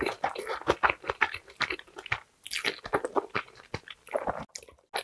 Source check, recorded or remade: recorded